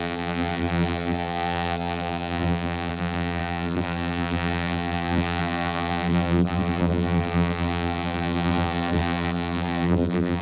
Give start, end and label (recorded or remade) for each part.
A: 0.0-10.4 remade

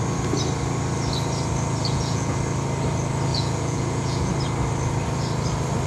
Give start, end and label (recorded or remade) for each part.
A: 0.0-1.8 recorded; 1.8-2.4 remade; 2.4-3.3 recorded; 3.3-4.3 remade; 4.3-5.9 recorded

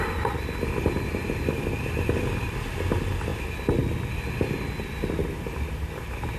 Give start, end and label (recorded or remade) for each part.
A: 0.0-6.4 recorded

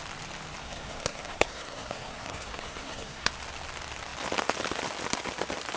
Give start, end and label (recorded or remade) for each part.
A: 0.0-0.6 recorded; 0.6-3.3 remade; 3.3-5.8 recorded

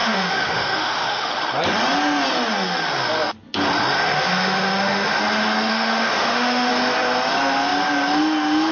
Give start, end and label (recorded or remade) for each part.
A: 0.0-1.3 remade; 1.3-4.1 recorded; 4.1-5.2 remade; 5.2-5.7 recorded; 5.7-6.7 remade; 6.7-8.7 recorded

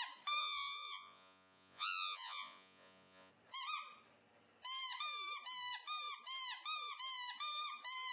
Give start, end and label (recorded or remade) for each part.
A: 0.0-0.4 recorded; 0.4-3.3 remade; 3.3-8.1 recorded

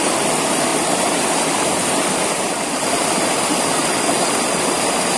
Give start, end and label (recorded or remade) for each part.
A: 0.0-5.2 recorded